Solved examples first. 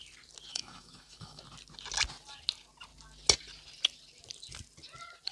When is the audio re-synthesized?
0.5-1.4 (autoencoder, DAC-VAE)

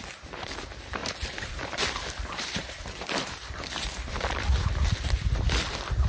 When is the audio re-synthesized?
1.0-4.7 (vocoder, BigVGAN v2)

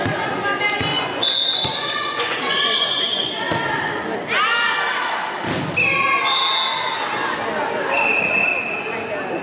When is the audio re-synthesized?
0.9-3.3 (vocoder, Vocos)

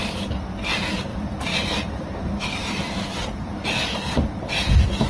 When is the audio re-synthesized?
1.1-3.7 (vocoder, BigVGAN v2)